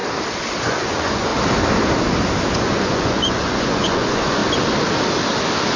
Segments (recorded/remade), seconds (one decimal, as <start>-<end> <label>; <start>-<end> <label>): 0.0-0.6 recorded; 0.6-1.3 remade; 1.3-2.5 recorded; 2.5-4.4 remade; 4.4-5.8 recorded